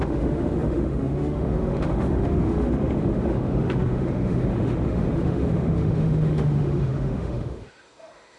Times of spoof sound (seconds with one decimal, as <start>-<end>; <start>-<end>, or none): 0.0-8.4